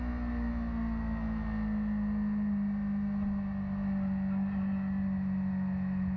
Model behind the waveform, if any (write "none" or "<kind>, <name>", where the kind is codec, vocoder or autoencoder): none